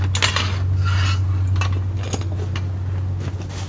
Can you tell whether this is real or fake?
real